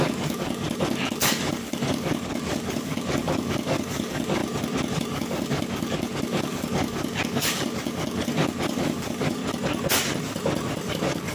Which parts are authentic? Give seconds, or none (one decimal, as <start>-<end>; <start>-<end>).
4.4-4.9; 9.4-10.9